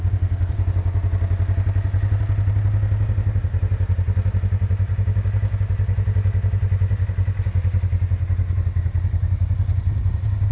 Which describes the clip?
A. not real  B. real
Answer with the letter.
B